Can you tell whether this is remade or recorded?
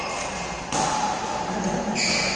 recorded